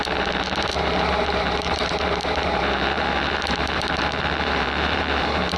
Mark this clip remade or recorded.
remade